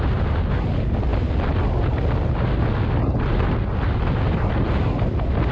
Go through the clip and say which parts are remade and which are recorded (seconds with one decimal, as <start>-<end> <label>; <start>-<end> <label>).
0.0-5.5 recorded